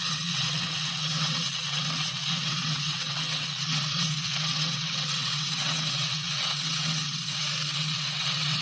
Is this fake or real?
fake